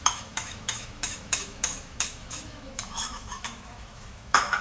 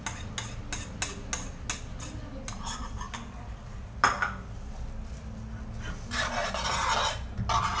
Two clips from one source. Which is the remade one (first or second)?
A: first